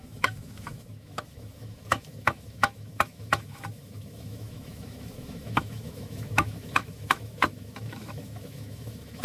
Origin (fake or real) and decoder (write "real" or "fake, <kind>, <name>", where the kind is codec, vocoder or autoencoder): fake, autoencoder, DAC-VAE